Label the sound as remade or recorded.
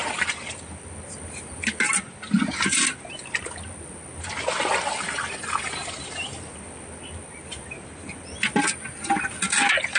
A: recorded